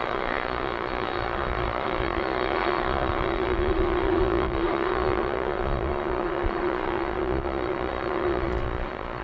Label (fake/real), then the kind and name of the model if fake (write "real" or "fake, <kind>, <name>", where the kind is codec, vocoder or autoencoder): fake, vocoder, Vocos